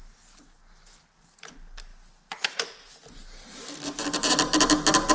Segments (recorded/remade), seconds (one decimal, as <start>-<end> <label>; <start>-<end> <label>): 0.0-5.1 recorded